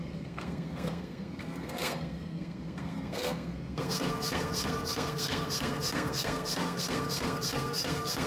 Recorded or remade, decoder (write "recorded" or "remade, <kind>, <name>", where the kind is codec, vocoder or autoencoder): remade, codec, SNAC